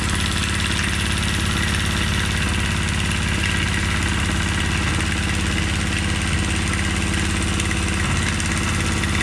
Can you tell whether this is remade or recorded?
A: recorded